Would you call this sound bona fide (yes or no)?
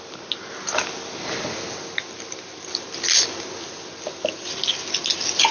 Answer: yes